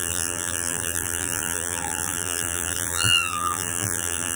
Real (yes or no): no